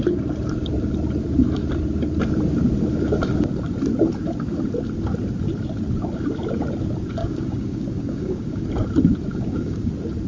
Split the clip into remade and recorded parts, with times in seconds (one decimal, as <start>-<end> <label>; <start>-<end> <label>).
0.0-7.2 recorded; 7.2-8.6 remade; 8.6-9.3 recorded; 9.3-9.9 remade; 9.9-10.3 recorded